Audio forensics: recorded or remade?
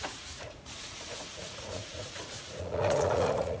remade